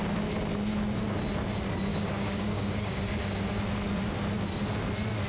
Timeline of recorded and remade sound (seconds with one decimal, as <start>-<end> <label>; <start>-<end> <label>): 0.0-1.9 recorded; 1.9-3.6 remade; 3.6-5.3 recorded